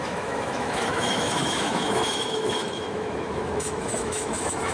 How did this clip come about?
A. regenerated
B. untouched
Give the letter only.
A